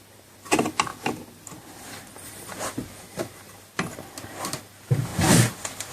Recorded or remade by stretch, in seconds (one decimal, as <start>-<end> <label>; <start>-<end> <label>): 0.0-0.9 recorded; 0.9-4.4 remade; 4.4-5.9 recorded